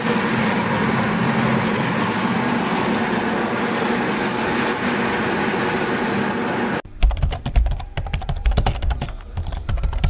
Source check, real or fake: fake